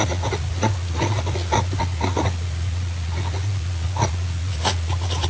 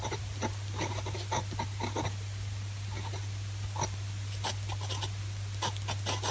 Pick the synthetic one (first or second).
first